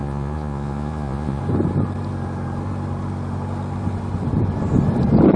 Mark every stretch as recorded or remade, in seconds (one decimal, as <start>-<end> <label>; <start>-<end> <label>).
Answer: 0.0-1.4 remade; 1.4-5.4 recorded